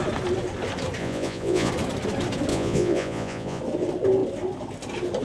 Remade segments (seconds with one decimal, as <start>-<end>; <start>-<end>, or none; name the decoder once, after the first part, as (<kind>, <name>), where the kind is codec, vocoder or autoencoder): 1.0-1.7 (vocoder, Vocos); 2.5-3.6